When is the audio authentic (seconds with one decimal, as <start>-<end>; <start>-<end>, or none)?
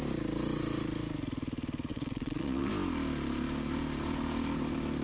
0.0-1.9; 2.7-5.0